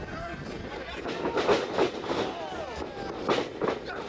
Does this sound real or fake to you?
real